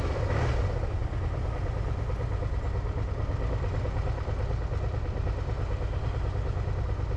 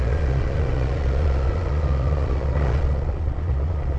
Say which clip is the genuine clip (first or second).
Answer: first